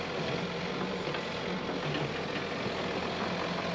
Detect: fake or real real